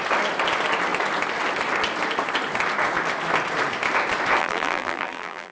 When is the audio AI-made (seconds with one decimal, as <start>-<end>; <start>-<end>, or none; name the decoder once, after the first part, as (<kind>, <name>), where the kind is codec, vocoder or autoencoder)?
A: 4.4-5.5 (vocoder, BigVGAN v2)